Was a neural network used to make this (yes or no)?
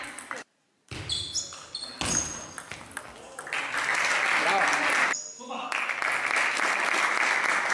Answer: no